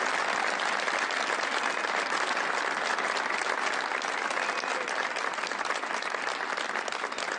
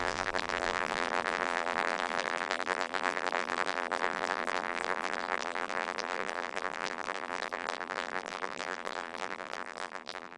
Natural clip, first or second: first